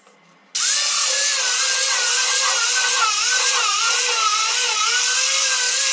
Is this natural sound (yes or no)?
yes